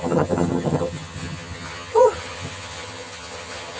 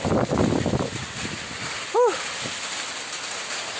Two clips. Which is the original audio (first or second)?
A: second